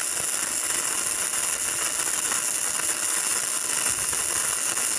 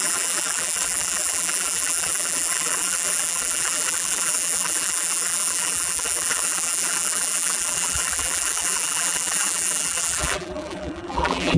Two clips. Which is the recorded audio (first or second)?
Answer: first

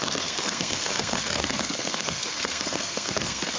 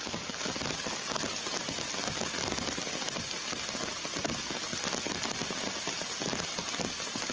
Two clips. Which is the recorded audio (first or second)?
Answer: second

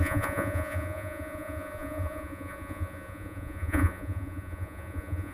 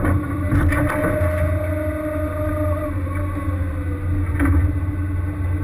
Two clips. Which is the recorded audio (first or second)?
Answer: second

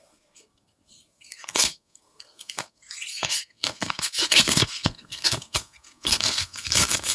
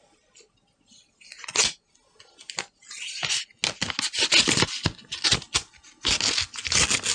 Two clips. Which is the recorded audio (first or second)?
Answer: second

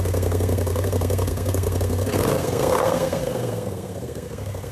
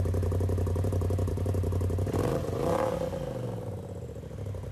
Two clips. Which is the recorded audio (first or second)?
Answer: second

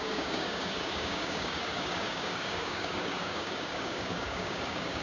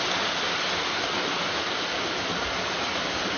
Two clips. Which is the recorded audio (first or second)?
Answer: second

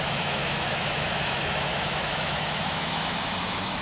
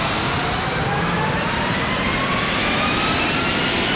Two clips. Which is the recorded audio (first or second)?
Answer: second